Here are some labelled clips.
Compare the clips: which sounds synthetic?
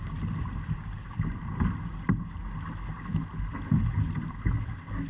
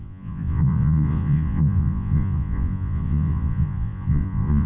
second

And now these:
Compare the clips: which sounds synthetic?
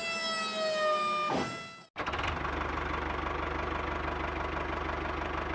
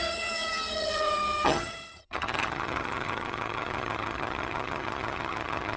second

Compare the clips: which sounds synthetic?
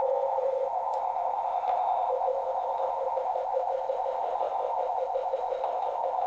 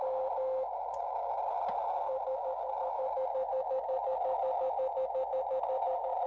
first